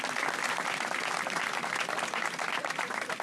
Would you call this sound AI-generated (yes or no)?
no